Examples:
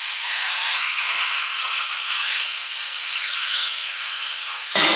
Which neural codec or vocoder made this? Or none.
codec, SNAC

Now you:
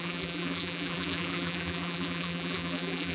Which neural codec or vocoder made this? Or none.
vocoder, BigVGAN v2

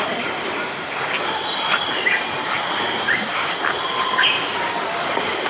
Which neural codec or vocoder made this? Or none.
vocoder, BigVGAN v2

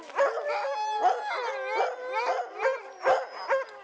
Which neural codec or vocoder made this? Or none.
none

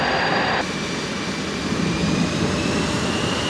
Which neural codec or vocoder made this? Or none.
none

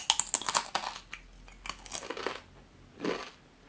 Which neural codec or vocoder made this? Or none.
none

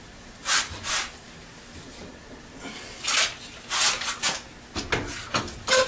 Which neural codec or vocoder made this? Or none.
none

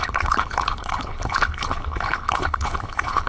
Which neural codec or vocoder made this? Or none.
codec, HILCodec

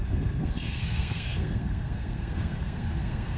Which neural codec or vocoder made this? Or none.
codec, SNAC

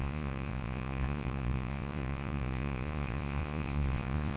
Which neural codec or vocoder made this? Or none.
vocoder, Vocos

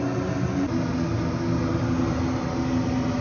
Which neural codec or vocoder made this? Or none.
none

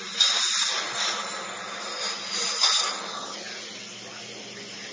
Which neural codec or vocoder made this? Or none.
none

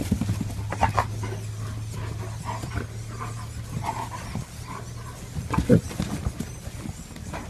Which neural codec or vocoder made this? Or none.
none